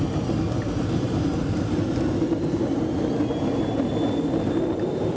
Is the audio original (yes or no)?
yes